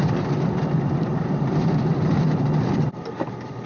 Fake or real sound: fake